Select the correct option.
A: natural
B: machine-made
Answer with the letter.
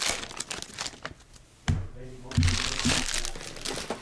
A